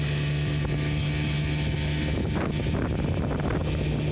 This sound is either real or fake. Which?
real